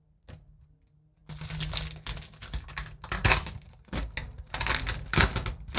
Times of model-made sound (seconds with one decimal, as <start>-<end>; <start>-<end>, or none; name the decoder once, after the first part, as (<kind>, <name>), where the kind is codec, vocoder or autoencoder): none